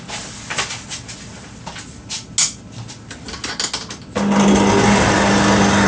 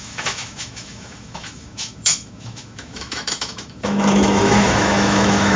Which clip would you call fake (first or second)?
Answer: second